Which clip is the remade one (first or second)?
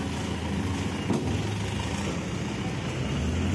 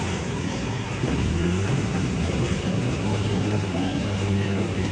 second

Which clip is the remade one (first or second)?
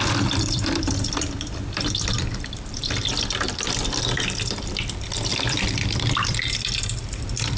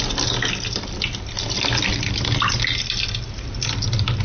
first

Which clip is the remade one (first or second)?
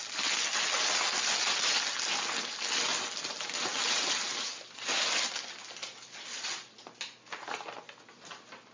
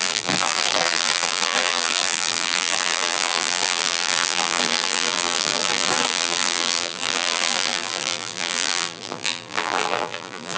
second